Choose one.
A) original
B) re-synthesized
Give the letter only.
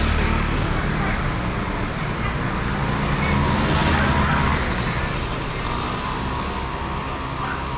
A